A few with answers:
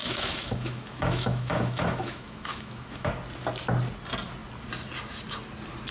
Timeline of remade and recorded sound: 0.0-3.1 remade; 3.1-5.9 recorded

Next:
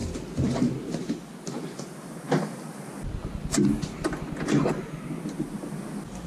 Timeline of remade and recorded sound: 0.0-6.3 recorded

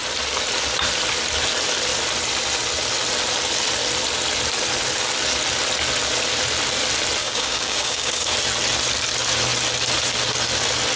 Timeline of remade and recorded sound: 0.0-7.2 recorded; 7.2-8.3 remade; 8.3-11.0 recorded

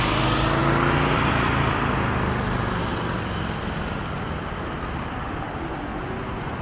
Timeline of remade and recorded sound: 0.0-5.9 recorded; 5.9-6.6 remade